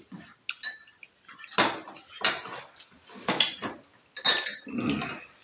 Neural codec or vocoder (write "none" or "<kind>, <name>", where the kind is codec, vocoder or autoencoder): none